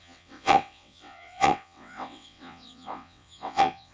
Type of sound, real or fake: fake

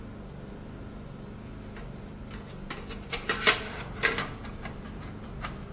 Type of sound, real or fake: real